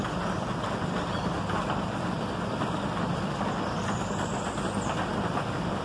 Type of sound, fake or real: real